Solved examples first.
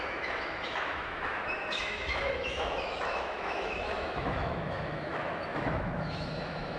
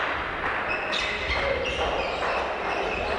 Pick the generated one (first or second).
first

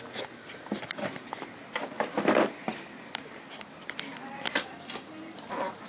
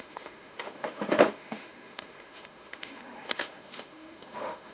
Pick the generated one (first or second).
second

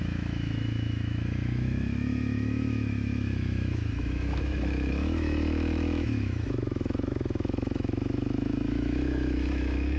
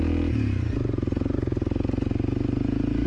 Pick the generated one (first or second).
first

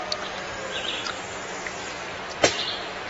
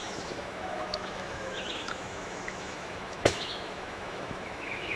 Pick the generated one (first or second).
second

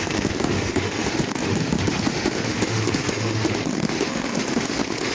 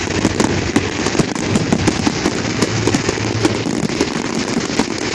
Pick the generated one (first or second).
first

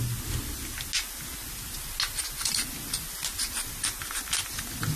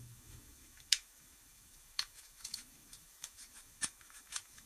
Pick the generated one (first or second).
second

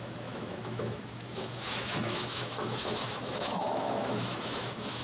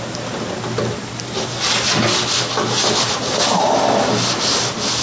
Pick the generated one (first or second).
first